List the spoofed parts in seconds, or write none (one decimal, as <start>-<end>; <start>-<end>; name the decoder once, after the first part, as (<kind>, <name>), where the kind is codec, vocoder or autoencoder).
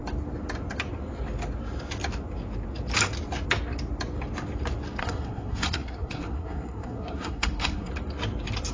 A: 5.0-7.9 (codec, SNAC)